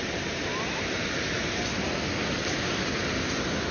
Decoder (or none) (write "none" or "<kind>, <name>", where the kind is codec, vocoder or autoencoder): none